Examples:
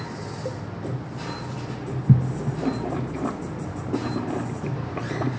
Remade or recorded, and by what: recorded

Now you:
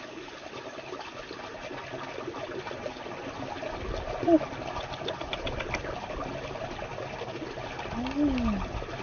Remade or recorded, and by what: recorded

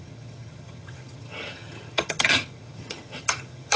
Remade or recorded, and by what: remade, vocoder, HiFi-GAN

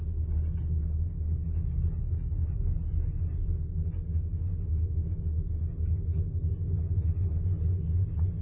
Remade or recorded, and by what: recorded